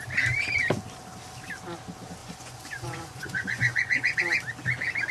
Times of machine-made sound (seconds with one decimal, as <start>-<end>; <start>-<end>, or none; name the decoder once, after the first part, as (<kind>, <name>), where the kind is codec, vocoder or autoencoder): 2.2-4.2 (vocoder, Vocos)

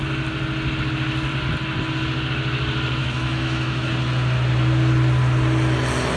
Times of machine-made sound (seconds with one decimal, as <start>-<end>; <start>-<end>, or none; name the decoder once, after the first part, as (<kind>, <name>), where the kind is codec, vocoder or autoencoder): 3.0-3.9 (autoencoder, DAC-VAE)

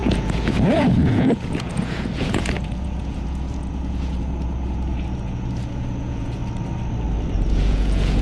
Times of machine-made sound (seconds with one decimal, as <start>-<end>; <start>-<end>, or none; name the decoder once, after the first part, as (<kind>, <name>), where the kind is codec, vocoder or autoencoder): 0.0-6.4 (vocoder, Vocos); 7.3-8.2